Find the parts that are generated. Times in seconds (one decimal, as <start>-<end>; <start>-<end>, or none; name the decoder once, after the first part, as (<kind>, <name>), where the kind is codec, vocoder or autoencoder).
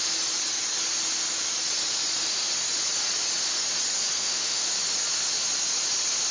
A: 4.2-4.7 (autoencoder, DAC-VAE)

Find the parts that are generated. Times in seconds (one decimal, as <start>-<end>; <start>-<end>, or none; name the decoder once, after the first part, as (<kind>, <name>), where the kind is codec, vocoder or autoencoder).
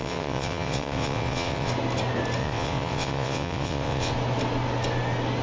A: 0.0-1.7 (vocoder, WaveNeXt); 2.4-4.1